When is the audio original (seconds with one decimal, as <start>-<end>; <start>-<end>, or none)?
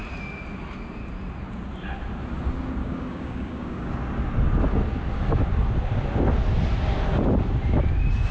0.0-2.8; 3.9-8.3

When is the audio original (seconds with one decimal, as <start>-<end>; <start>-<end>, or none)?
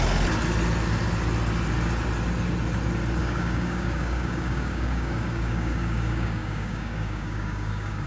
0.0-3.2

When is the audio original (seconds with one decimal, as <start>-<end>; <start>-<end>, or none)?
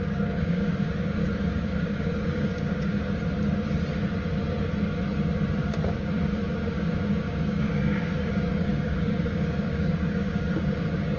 3.0-5.6